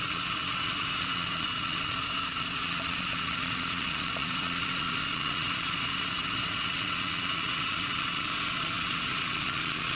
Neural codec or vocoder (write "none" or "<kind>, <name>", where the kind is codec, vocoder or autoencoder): vocoder, Vocos